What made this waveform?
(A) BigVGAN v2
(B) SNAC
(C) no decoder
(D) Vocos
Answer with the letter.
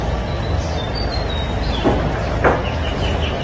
C